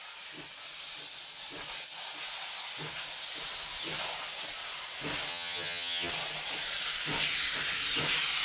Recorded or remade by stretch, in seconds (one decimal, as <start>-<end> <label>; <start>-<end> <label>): 0.0-5.3 recorded; 5.3-6.1 remade; 6.1-8.4 recorded